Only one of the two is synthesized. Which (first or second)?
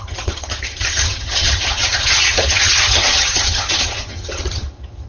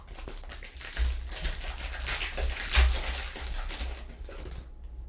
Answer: first